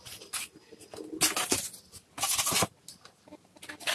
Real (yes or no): yes